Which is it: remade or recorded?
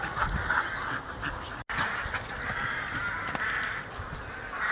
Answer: recorded